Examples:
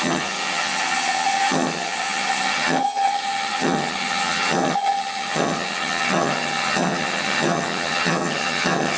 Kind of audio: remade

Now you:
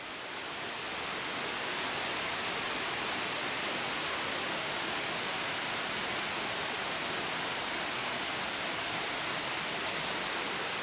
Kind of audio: recorded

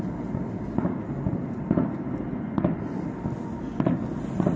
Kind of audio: recorded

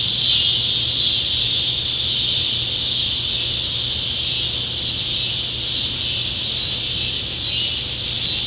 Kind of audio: recorded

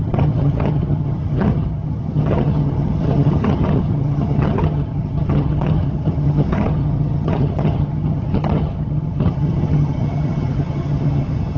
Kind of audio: remade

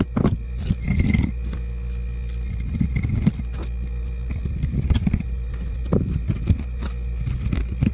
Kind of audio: recorded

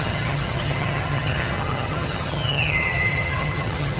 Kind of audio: remade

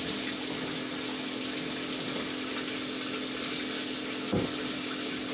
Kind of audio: recorded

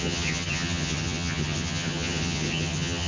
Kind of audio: remade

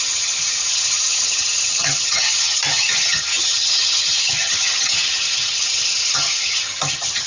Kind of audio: remade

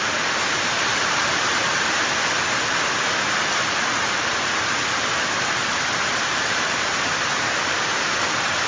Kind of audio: recorded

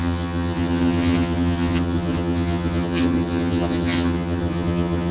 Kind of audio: remade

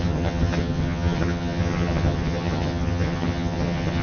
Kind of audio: remade